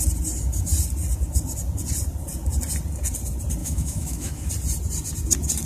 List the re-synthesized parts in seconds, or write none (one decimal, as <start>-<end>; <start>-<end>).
3.6-4.5